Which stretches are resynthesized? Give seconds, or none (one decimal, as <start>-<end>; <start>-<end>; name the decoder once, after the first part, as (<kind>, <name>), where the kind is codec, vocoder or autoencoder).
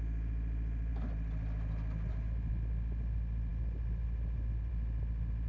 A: none